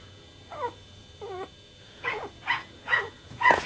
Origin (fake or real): fake